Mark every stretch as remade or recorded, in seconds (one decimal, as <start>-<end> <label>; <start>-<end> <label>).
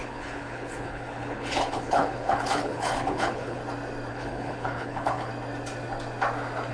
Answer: 0.0-3.6 remade; 3.6-4.1 recorded; 4.1-5.3 remade; 5.3-6.7 recorded